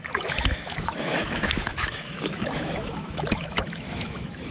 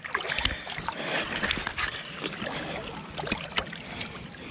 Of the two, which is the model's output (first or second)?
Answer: first